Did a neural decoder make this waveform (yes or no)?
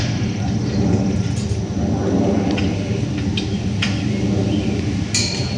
no